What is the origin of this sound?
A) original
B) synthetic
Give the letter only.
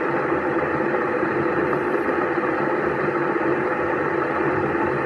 A